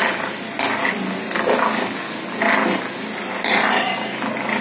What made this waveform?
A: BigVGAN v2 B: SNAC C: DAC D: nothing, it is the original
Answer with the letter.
D